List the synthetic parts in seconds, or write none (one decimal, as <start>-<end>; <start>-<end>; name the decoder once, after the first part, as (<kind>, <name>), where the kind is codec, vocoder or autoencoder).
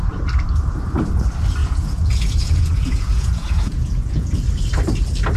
1.6-4.4 (vocoder, Vocos)